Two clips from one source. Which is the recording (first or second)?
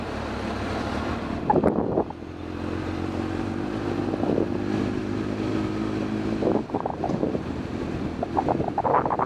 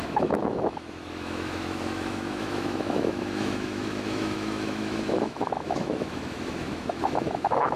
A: first